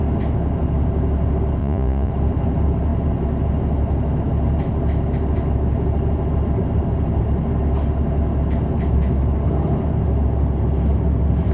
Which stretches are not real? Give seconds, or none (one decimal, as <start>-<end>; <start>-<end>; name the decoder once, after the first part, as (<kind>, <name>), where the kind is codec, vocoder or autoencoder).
1.6-2.1 (vocoder, Vocos)